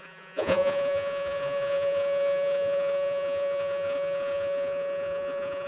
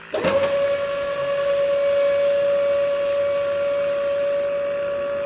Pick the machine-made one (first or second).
first